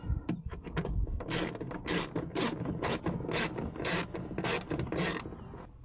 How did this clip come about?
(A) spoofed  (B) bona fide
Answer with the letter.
B